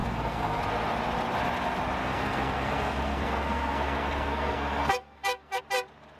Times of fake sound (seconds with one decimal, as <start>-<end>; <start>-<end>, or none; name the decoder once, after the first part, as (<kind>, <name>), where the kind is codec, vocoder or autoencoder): 0.0-0.6 (codec, SNAC); 2.0-5.6